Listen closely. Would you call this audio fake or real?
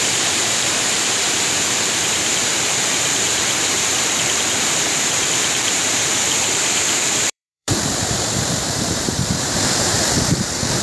fake